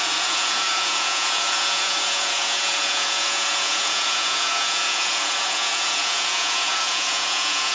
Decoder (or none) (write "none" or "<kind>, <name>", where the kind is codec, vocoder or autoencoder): vocoder, Vocos